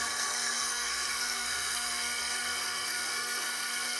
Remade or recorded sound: remade